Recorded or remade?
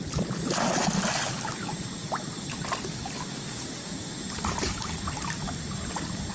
recorded